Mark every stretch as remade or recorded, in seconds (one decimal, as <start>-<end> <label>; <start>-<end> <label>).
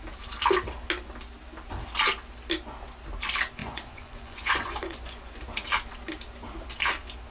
0.0-3.6 recorded; 3.6-5.3 remade; 5.3-7.3 recorded